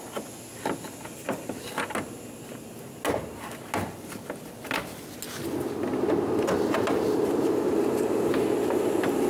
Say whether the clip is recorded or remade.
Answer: recorded